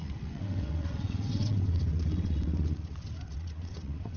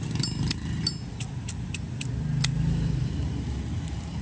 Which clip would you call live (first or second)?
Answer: second